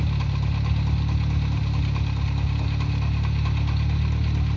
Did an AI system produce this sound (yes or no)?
no